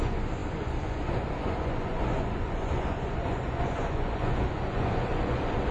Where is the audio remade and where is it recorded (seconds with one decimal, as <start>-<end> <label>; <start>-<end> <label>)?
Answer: 0.0-5.7 remade